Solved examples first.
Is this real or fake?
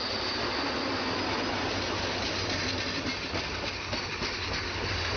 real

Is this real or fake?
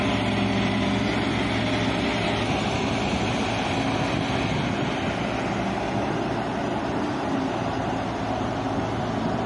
real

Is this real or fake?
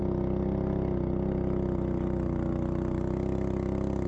real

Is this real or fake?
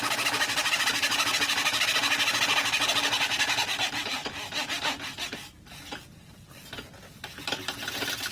real